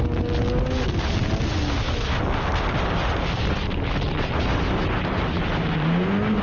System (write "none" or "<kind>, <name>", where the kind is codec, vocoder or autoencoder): none